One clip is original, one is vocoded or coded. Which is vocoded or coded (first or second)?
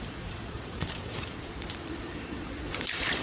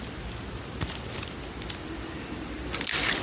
first